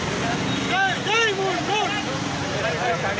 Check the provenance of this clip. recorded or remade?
recorded